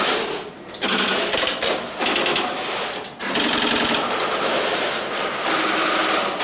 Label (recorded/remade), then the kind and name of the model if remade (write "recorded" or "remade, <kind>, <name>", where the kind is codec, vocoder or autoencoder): recorded